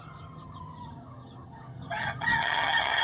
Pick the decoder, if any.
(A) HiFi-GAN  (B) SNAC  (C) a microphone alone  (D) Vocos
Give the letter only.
A